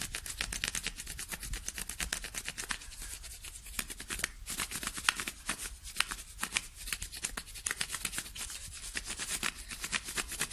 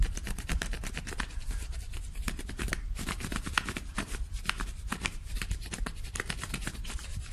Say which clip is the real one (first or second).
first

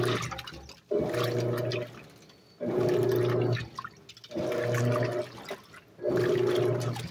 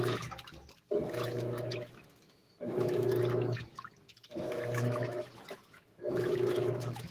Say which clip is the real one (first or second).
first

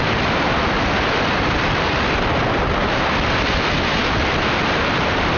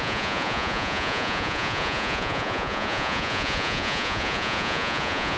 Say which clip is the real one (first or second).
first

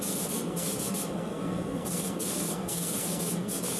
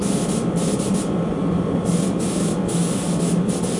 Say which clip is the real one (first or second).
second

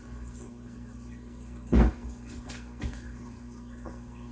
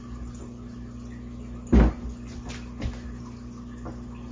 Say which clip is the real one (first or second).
second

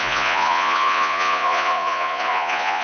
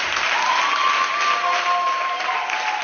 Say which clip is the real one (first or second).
second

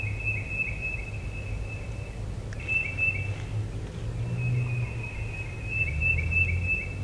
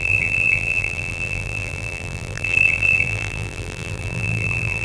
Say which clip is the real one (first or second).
first